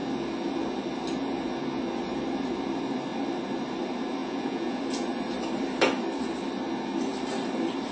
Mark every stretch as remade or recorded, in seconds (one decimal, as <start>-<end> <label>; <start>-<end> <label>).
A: 0.0-4.2 recorded; 4.2-4.8 remade; 4.8-7.9 recorded